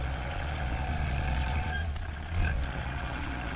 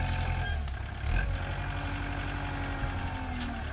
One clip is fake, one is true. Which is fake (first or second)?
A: first